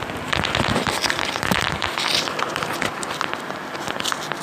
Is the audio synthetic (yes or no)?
yes